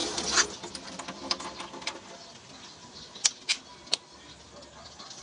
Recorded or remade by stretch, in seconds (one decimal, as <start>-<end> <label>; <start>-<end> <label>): 0.0-5.2 recorded